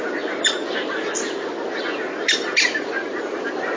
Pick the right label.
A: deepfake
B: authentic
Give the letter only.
B